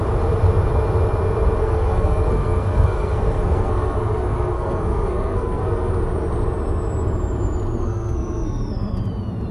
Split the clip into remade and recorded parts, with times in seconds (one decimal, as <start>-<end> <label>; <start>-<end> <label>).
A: 0.0-1.6 recorded; 1.6-5.9 remade; 5.9-7.8 recorded; 7.8-9.0 remade; 9.0-9.5 recorded